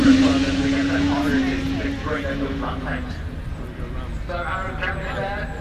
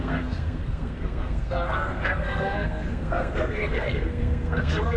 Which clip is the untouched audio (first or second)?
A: first